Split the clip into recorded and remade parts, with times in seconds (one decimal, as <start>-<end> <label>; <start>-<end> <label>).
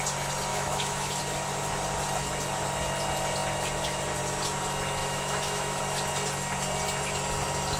0.0-0.5 recorded; 0.5-1.2 remade; 1.2-5.0 recorded; 5.0-5.8 remade; 5.8-7.8 recorded